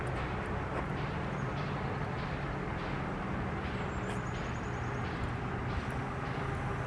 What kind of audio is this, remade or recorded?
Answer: recorded